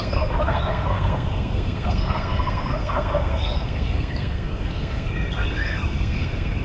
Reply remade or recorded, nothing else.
remade